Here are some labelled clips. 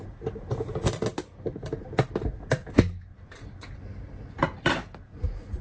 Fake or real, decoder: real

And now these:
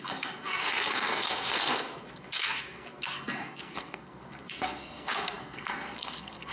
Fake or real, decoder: fake, codec, SNAC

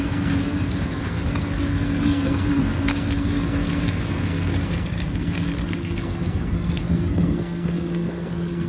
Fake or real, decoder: fake, codec, SNAC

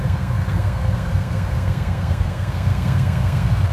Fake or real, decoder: fake, codec, SNAC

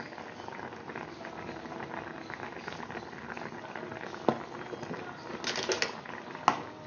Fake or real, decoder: real